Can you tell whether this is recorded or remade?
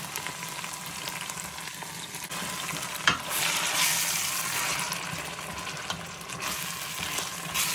recorded